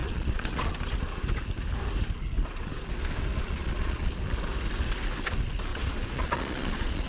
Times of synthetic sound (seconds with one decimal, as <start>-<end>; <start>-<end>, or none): 0.0-0.7; 2.4-2.9; 3.4-4.1; 5.7-7.1